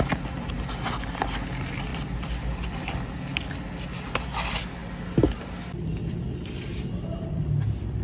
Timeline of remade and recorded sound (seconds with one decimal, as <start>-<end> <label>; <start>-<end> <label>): 0.0-1.9 recorded; 1.9-3.2 remade; 3.2-8.0 recorded